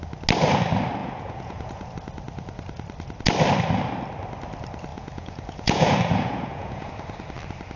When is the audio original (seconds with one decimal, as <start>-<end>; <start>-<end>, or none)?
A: 0.0-1.0; 1.9-4.9; 6.9-7.8